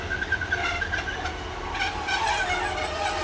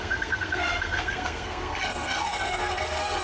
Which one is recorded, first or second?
first